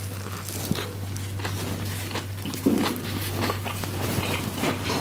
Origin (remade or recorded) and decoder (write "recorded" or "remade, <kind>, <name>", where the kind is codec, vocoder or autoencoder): recorded